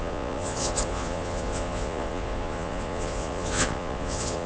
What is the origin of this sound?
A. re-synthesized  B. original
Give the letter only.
A